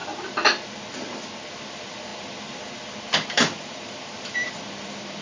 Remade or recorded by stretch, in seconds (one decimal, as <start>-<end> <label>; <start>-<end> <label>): 0.0-1.6 recorded; 1.6-5.2 remade